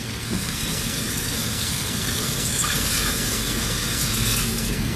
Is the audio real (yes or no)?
no